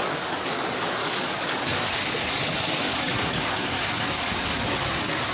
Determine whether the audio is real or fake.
fake